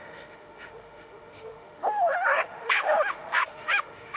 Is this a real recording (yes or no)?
no